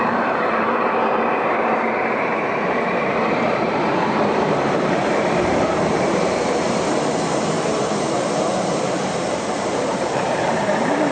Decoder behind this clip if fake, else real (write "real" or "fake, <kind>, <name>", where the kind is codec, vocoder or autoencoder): fake, vocoder, BigVGAN v2